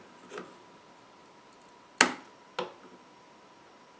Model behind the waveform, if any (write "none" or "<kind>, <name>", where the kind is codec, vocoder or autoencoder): none